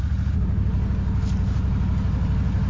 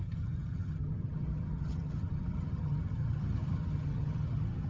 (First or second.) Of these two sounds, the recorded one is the first